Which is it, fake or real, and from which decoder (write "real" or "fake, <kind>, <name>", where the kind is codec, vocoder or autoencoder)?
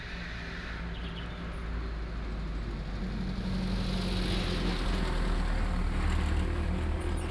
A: real